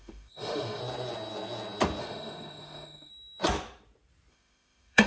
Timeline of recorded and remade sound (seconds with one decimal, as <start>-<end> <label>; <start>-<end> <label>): 0.0-0.8 remade; 0.8-2.0 recorded; 2.0-3.1 remade; 3.1-4.3 recorded; 4.3-5.1 remade